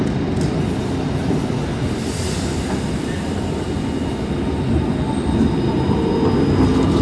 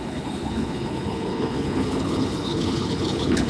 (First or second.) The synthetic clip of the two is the second